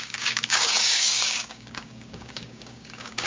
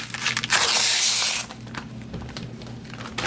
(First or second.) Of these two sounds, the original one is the second